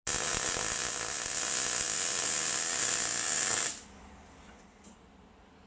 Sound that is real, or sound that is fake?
real